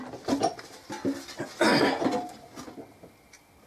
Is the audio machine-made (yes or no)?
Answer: no